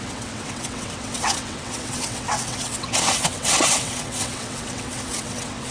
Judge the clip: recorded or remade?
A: remade